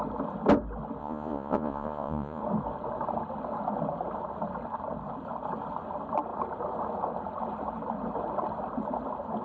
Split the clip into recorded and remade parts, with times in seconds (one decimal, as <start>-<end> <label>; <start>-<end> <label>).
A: 0.0-1.0 recorded; 1.0-2.4 remade; 2.4-9.4 recorded